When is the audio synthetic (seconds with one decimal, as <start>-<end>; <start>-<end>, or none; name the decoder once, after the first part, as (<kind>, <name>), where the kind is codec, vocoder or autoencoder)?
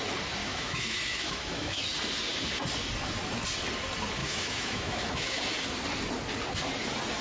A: 0.4-1.8 (autoencoder, DAC-VAE); 4.2-5.4